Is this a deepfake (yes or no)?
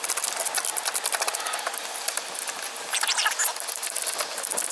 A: no